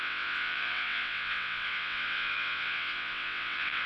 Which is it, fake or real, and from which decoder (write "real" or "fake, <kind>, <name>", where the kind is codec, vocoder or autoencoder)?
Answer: fake, vocoder, WaveNeXt